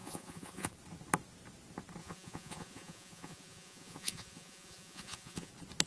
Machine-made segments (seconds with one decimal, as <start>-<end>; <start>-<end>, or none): 0.0-0.7; 2.0-5.5